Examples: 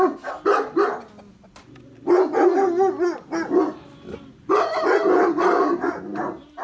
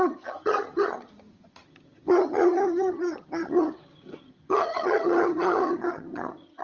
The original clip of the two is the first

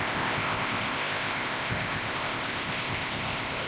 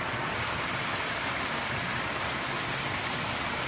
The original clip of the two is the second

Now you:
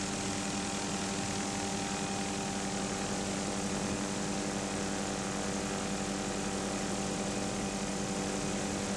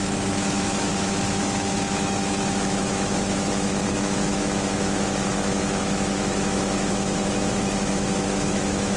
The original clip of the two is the first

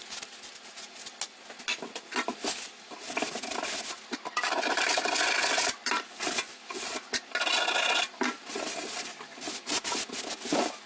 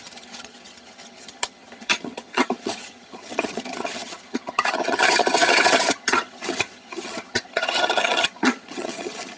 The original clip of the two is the first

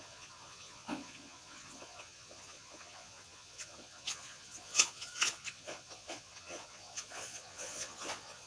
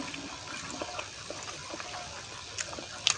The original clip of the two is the second